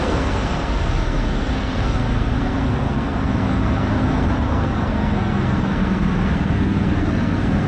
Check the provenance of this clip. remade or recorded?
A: remade